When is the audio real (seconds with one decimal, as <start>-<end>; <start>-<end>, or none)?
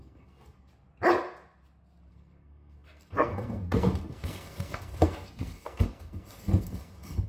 0.7-2.1